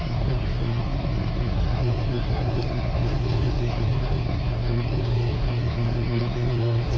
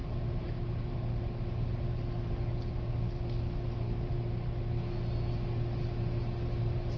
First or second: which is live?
second